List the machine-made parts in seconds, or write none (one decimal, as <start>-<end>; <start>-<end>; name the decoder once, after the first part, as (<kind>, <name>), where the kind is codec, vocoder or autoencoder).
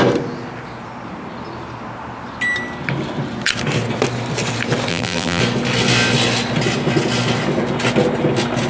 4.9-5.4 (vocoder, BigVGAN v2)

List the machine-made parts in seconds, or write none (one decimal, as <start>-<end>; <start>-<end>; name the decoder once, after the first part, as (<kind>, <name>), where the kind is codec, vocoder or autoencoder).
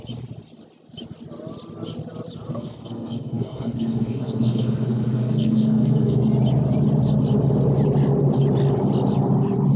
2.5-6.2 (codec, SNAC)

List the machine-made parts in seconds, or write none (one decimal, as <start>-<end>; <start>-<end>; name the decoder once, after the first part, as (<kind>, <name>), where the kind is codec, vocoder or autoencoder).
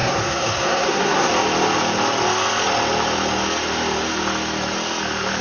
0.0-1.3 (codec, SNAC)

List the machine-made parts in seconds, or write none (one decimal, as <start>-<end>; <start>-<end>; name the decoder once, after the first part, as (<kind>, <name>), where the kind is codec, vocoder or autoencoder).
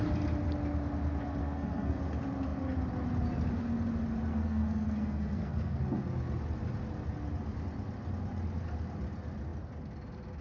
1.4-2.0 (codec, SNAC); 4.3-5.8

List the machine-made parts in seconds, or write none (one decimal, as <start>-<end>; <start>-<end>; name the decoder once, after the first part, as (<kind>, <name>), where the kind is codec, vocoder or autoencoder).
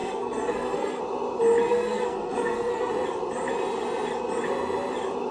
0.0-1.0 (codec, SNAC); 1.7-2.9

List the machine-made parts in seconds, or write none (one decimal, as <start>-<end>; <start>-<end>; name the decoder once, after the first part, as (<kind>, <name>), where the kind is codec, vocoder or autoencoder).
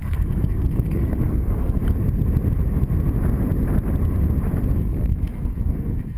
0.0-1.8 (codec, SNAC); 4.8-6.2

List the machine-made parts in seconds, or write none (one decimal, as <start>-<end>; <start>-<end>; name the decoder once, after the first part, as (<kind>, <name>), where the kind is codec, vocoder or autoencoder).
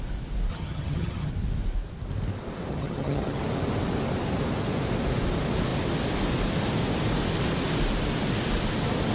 0.5-1.3 (vocoder, HiFi-GAN); 2.7-3.4